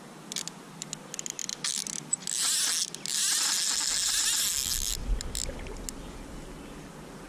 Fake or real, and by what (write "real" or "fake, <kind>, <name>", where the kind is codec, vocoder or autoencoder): real